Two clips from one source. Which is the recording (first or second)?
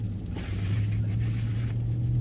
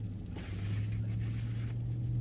second